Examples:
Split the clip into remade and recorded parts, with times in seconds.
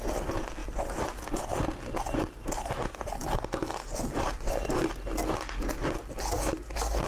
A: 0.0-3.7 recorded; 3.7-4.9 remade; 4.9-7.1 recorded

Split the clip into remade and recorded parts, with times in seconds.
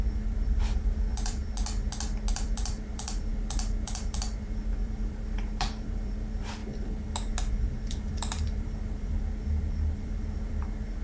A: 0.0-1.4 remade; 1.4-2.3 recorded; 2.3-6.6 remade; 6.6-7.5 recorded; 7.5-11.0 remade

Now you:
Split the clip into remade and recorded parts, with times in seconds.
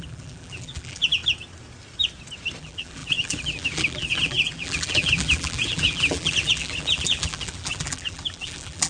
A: 0.0-1.2 remade; 1.2-2.6 recorded; 2.6-8.9 remade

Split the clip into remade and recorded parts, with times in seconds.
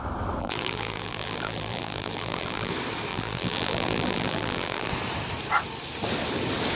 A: 0.0-0.4 recorded; 0.4-2.7 remade; 2.7-3.1 recorded; 3.1-4.9 remade; 4.9-6.8 recorded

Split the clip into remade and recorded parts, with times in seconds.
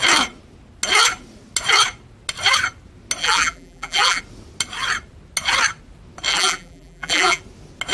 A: 0.0-3.2 recorded; 3.2-4.2 remade; 4.2-6.3 recorded; 6.3-7.4 remade; 7.4-7.9 recorded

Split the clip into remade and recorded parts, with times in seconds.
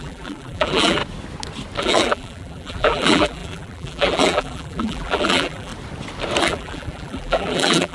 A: 0.0-1.0 remade; 1.0-1.8 recorded; 1.8-5.7 remade; 5.7-6.4 recorded; 6.4-7.9 remade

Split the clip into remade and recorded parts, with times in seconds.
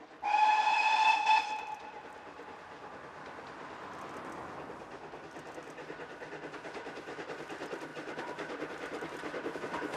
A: 0.0-7.9 recorded; 7.9-9.6 remade; 9.6-10.0 recorded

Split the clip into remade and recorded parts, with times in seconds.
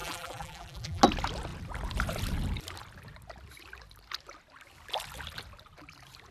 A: 0.0-1.0 remade; 1.0-6.3 recorded